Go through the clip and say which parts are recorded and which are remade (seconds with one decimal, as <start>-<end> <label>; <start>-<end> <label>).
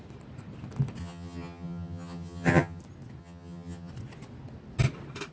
0.0-1.0 recorded; 1.0-2.8 remade; 2.8-3.2 recorded; 3.2-3.9 remade; 3.9-5.3 recorded